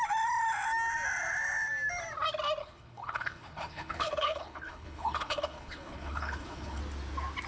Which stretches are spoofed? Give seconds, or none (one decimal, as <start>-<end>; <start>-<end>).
2.6-6.8